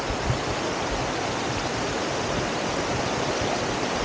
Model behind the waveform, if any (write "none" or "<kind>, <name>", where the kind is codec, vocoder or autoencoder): none